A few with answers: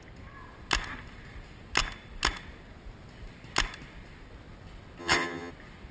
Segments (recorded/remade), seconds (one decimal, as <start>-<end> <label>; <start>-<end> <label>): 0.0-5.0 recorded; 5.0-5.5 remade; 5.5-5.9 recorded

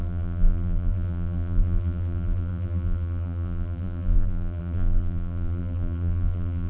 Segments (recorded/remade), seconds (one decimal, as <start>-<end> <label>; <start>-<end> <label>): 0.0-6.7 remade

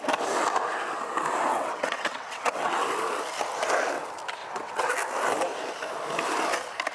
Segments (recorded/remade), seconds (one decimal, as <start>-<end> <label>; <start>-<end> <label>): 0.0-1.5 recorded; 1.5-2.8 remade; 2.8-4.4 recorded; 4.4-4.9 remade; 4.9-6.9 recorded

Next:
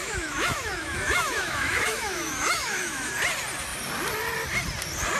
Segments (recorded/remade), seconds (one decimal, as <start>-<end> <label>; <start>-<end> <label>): 0.0-3.1 remade; 3.1-5.2 recorded

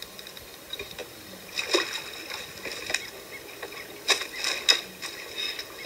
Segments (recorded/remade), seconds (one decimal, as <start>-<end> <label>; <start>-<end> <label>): 0.0-5.9 recorded